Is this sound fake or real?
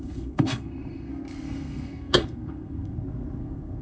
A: fake